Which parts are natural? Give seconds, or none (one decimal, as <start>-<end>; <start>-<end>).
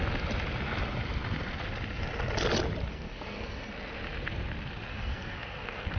0.0-2.9; 3.7-4.9